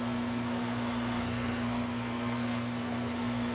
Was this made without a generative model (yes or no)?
no